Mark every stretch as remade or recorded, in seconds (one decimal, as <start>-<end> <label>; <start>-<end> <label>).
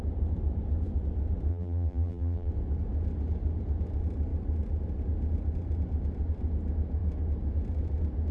0.0-1.5 recorded; 1.5-2.5 remade; 2.5-8.3 recorded